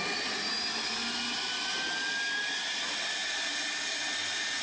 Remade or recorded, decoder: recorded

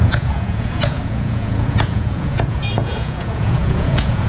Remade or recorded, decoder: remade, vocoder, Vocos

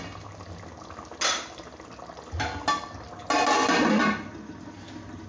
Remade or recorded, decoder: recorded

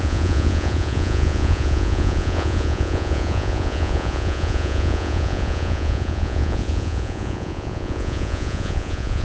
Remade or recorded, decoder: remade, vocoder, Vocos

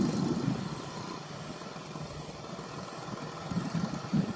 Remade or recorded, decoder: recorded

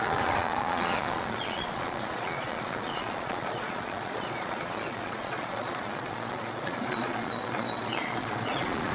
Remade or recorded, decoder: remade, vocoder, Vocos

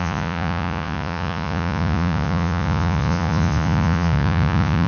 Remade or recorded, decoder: remade, vocoder, Vocos